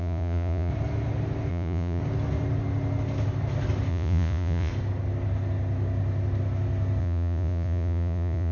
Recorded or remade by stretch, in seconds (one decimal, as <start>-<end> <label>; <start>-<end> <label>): 0.0-0.7 remade; 0.7-1.5 recorded; 1.5-2.0 remade; 2.0-3.9 recorded; 3.9-4.7 remade; 4.7-7.0 recorded; 7.0-8.5 remade